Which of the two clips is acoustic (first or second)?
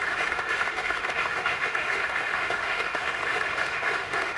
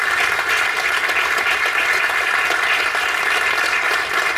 second